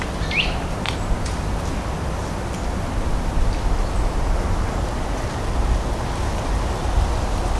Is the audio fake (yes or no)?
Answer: no